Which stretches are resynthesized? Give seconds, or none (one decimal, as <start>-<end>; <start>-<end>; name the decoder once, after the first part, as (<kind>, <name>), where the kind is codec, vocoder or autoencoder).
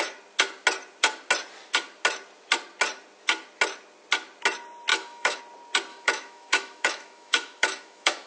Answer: 4.9-5.4 (autoencoder, DAC-VAE); 5.9-8.3